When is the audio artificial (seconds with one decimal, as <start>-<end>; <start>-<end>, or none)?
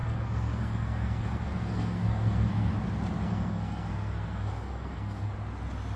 0.0-2.7; 3.2-5.3